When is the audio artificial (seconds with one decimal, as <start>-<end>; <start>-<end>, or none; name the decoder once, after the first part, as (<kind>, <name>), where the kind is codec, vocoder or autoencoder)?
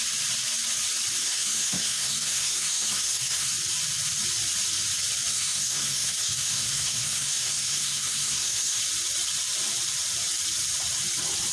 1.2-3.5 (codec, SNAC); 5.3-8.8